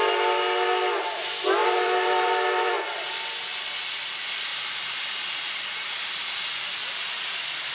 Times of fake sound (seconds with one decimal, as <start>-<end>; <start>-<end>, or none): 1.6-2.7; 4.5-6.1; 6.8-7.7